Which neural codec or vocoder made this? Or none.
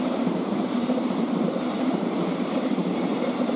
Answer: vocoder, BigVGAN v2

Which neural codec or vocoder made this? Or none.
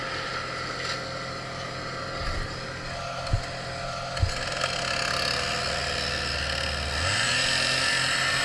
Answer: none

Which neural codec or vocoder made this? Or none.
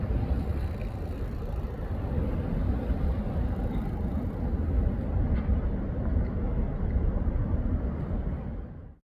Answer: none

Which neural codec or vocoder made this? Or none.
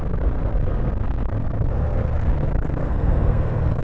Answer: codec, SNAC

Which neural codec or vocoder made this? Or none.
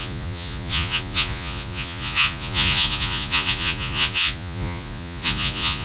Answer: vocoder, Vocos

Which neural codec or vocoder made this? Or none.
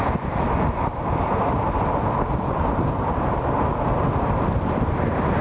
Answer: none